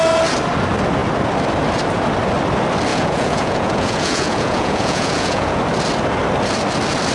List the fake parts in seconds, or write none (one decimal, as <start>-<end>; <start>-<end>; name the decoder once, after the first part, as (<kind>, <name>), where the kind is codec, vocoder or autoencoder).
2.9-5.6 (vocoder, Vocos)

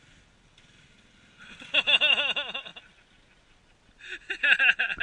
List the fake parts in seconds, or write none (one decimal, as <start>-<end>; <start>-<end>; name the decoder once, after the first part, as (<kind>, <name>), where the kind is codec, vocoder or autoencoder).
none